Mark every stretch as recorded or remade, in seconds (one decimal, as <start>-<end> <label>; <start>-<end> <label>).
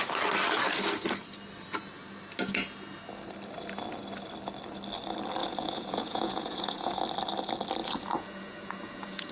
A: 0.0-5.4 recorded; 5.4-7.0 remade; 7.0-7.8 recorded; 7.8-9.3 remade